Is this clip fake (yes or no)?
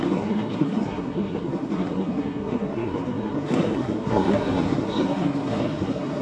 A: yes